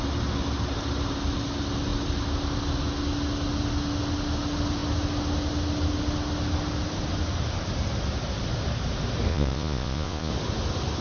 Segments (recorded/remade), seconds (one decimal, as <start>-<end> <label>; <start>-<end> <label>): 0.0-9.3 recorded; 9.3-10.3 remade; 10.3-11.0 recorded